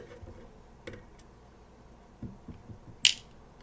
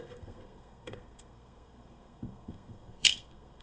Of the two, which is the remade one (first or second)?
second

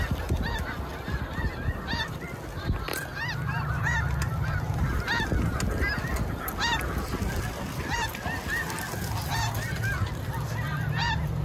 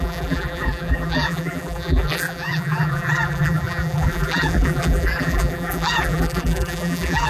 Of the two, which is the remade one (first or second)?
second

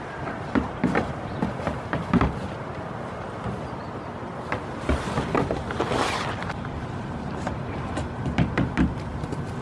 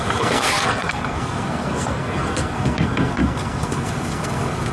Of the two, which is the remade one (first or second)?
second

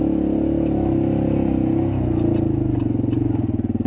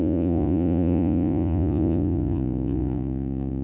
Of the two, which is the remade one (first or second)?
second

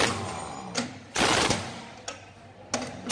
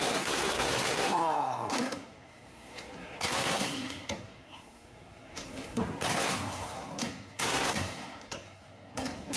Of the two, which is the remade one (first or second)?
second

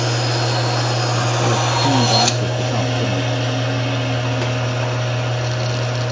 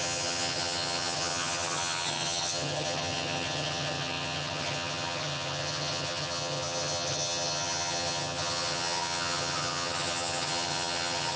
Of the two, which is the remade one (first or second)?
second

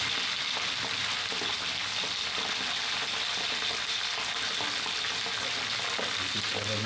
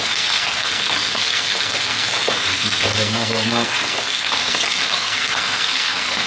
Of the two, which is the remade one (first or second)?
second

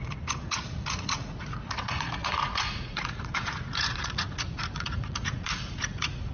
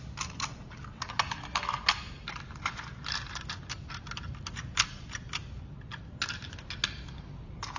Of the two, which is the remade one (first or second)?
first